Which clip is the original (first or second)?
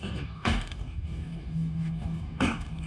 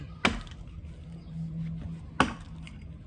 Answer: second